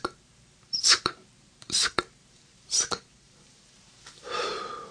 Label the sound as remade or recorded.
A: remade